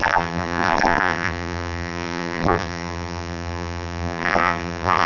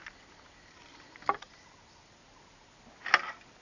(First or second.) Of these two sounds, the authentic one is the second